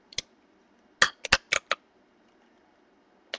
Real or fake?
real